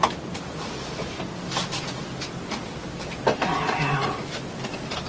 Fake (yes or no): no